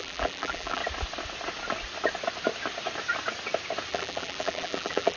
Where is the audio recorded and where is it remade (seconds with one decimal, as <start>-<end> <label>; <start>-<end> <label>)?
0.0-0.8 remade; 0.8-3.9 recorded; 3.9-5.2 remade